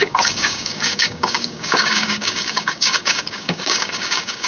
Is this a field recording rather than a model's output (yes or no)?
no